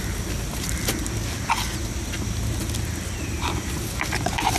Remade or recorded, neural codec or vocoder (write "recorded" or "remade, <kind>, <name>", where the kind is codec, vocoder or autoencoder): recorded